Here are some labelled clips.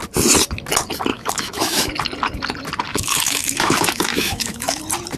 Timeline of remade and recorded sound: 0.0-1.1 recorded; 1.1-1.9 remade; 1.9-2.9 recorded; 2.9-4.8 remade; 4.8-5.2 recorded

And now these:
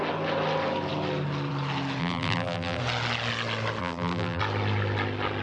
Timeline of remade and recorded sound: 0.0-2.0 recorded; 2.0-2.8 remade; 2.8-3.8 recorded; 3.8-4.4 remade; 4.4-5.4 recorded

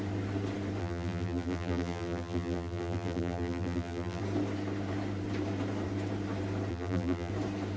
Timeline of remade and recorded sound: 0.0-0.8 recorded; 0.8-4.2 remade; 4.2-6.7 recorded; 6.7-7.3 remade; 7.3-7.8 recorded